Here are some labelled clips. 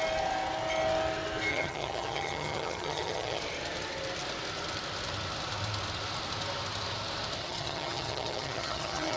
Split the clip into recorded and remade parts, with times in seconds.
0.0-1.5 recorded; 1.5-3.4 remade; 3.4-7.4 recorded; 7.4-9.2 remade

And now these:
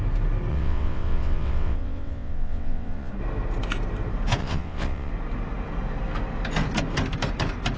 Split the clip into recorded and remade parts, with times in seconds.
0.0-0.5 recorded; 0.5-3.1 remade; 3.1-4.4 recorded; 4.4-5.1 remade; 5.1-7.8 recorded

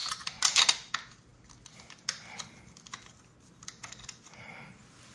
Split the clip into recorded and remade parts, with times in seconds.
0.0-5.1 recorded

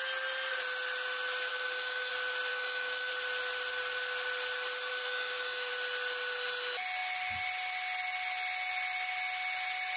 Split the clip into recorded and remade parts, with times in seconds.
0.0-1.5 recorded; 1.5-2.1 remade; 2.1-2.5 recorded; 2.5-3.1 remade; 3.1-4.9 recorded; 4.9-5.7 remade; 5.7-10.0 recorded